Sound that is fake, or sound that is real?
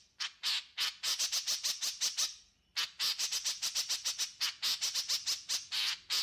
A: fake